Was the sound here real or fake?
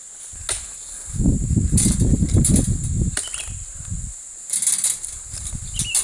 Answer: real